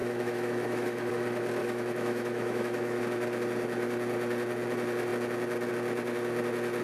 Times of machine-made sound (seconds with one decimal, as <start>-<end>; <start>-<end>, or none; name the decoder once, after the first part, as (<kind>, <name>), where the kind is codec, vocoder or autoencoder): 0.0-1.1 (autoencoder, DAC-VAE); 1.6-3.0